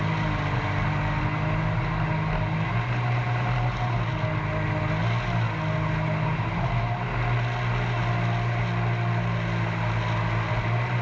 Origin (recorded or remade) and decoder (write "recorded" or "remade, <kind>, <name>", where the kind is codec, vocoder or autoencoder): recorded